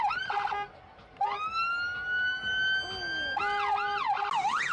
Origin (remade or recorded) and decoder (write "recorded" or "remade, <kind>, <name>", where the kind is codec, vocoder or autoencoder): recorded